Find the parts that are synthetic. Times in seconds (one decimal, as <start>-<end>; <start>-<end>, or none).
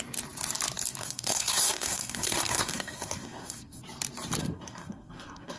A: 1.0-3.8; 4.4-5.6